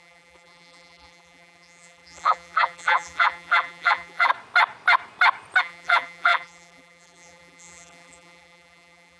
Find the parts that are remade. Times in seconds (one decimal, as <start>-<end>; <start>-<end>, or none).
0.0-4.3; 5.6-9.2